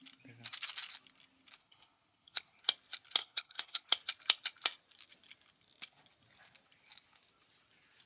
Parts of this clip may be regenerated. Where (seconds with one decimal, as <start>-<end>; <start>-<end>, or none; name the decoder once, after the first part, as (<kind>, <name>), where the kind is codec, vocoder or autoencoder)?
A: 1.6-2.6 (codec, HILCodec); 3.2-3.9

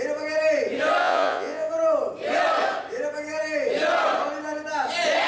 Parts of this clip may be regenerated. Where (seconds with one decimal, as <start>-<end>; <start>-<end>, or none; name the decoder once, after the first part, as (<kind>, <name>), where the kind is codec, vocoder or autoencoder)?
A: 1.0-1.7 (vocoder, Vocos)